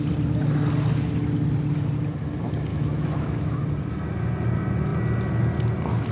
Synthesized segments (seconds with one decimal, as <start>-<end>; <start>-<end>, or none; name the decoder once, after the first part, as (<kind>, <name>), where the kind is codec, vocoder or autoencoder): 2.7-3.6 (autoencoder, DAC-VAE)